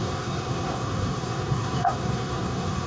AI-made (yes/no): yes